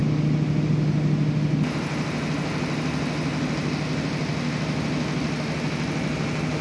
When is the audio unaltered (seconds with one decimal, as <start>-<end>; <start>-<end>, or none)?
0.0-6.6